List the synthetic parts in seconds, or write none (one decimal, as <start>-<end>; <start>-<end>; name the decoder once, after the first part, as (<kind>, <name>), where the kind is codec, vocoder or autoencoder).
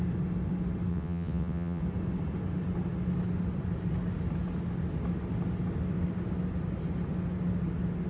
0.9-1.8 (vocoder, WaveNeXt)